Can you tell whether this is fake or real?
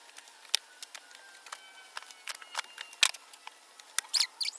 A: real